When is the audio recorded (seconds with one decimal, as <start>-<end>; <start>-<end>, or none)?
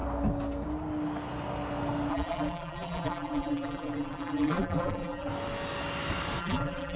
0.0-2.1; 5.3-6.4